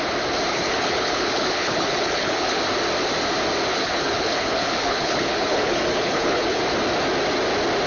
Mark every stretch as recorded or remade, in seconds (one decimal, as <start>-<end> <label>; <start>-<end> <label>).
0.0-0.5 recorded; 0.5-2.6 remade; 2.6-3.7 recorded; 3.7-6.6 remade; 6.6-7.9 recorded